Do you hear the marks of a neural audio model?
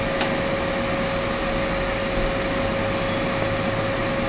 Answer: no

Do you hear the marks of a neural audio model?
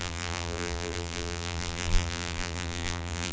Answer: yes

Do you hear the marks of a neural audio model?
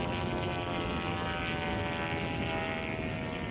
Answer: no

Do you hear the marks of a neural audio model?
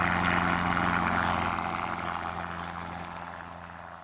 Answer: no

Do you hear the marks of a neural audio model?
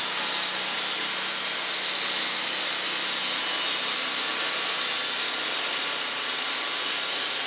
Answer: no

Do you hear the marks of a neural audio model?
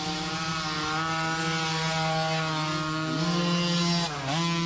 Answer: no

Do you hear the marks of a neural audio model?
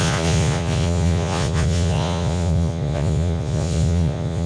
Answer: yes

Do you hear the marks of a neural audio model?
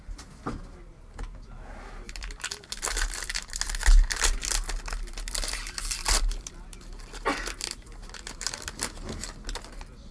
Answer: no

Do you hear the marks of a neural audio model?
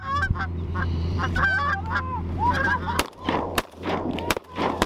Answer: yes